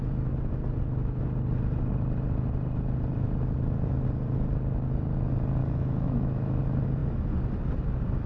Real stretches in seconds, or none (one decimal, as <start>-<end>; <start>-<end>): 0.0-5.6; 6.6-8.3